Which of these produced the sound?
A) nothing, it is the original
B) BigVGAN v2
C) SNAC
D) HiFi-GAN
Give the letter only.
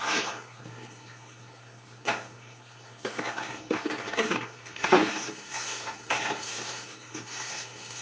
C